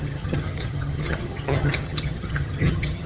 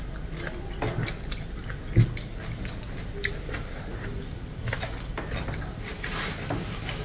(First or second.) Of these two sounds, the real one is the second